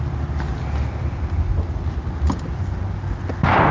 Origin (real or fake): real